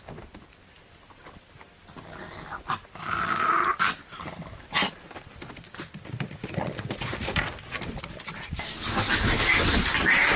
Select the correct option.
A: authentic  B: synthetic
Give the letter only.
A